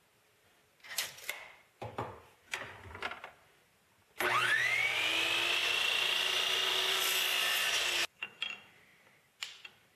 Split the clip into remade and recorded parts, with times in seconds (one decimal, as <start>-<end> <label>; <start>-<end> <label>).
0.0-5.6 recorded; 5.6-7.7 remade; 7.7-8.9 recorded; 8.9-10.0 remade